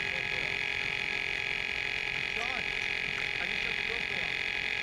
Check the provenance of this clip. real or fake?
real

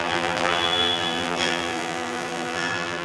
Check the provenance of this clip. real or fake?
fake